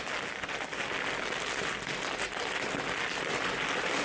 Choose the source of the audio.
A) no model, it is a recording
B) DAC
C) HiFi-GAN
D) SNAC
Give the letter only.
A